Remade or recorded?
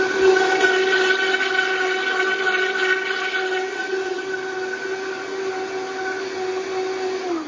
recorded